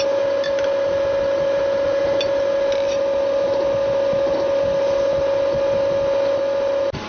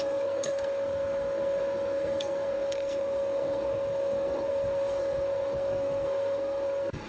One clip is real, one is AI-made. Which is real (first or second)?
first